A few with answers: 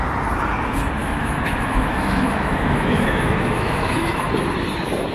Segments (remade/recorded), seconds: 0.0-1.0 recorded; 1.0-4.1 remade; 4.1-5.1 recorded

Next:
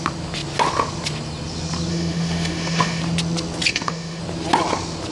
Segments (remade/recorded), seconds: 0.0-1.9 recorded; 1.9-3.0 remade; 3.0-3.7 recorded; 3.7-4.2 remade; 4.2-5.1 recorded

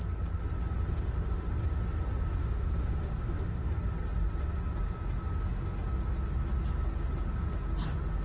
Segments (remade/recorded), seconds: 0.0-0.9 recorded; 0.9-1.5 remade; 1.5-2.4 recorded; 2.4-3.7 remade; 3.7-8.2 recorded

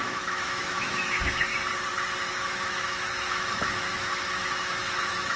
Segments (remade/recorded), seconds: 0.0-1.5 remade; 1.5-2.3 recorded; 2.3-5.4 remade

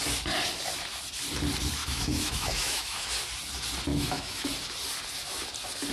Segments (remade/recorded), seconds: 0.0-1.8 recorded; 1.8-3.1 remade; 3.1-3.9 recorded; 3.9-4.5 remade; 4.5-5.9 recorded

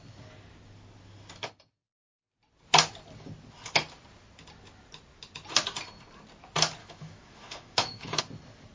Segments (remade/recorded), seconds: 0.0-6.8 recorded; 6.8-8.2 remade; 8.2-8.7 recorded

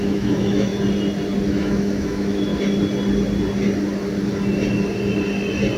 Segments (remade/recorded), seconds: 0.0-0.7 remade; 0.7-1.5 recorded; 1.5-2.5 remade; 2.5-5.8 recorded

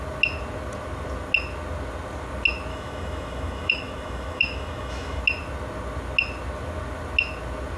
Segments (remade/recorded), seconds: 0.0-2.7 recorded; 2.7-5.2 remade; 5.2-7.8 recorded